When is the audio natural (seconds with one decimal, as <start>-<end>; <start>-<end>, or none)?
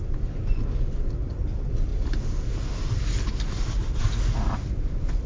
0.0-5.3